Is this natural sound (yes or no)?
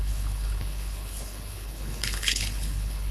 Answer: no